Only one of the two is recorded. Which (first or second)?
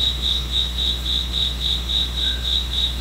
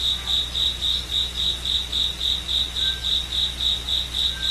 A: second